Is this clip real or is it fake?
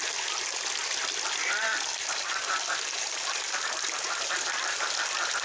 real